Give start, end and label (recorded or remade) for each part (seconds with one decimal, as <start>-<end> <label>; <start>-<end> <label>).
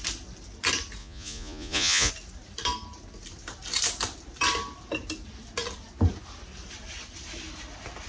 0.0-1.0 recorded; 1.0-2.1 remade; 2.1-8.1 recorded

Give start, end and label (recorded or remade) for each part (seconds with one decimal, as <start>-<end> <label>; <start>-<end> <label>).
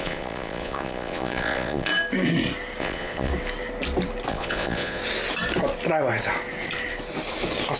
0.0-1.9 remade; 1.9-2.8 recorded; 2.8-3.3 remade; 3.3-4.3 recorded; 4.3-5.0 remade; 5.0-7.8 recorded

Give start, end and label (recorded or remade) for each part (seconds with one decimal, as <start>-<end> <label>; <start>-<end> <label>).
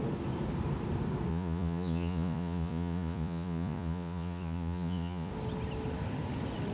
0.0-1.3 recorded; 1.3-5.3 remade; 5.3-6.7 recorded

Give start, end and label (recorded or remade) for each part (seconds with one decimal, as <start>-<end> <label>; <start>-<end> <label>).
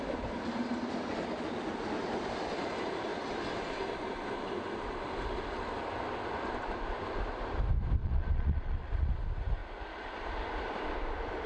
0.0-8.0 recorded; 8.0-9.1 remade; 9.1-11.5 recorded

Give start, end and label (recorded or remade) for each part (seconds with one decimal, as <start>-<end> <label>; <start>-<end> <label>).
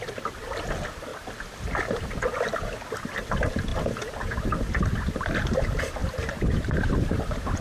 0.0-7.6 recorded